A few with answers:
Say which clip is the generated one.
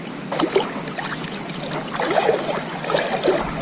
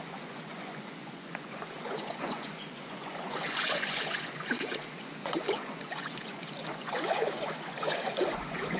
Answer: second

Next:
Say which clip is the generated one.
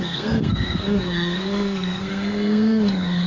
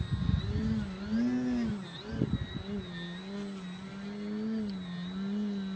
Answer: first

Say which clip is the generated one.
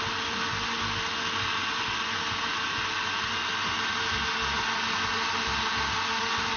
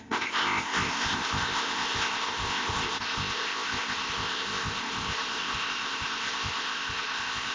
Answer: second